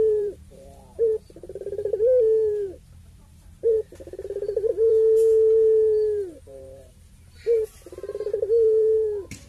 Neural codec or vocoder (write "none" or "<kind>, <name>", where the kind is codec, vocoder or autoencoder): vocoder, BigVGAN v2